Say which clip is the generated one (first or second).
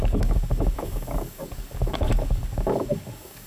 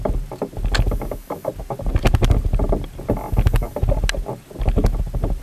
first